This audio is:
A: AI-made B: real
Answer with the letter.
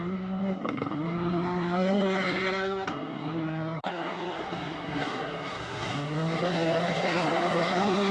A